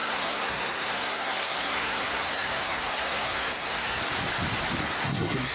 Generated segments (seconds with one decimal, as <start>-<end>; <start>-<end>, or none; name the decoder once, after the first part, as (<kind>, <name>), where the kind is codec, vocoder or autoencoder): 0.0-4.0 (codec, SNAC); 4.8-5.5